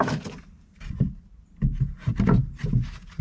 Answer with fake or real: real